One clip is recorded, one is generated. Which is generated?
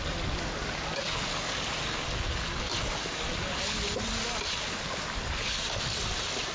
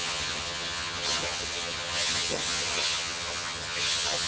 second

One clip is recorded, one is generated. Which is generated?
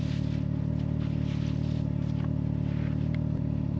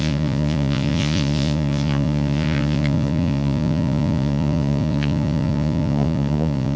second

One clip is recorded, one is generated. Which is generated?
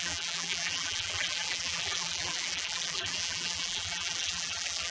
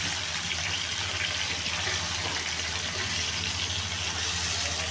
first